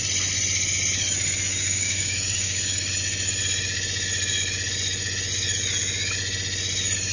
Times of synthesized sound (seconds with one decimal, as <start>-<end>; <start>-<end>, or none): 1.5-2.9